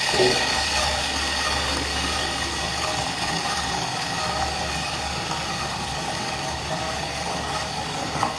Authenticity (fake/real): fake